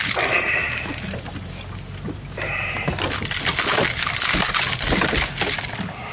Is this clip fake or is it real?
real